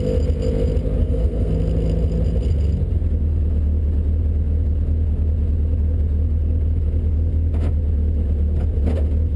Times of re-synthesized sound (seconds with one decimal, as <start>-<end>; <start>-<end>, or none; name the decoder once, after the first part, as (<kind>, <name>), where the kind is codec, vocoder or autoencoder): 1.0-1.5 (codec, SNAC)